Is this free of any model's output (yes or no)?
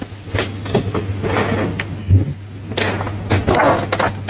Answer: yes